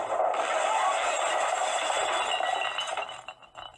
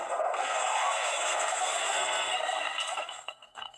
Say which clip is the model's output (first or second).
second